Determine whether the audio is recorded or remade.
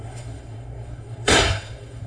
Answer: remade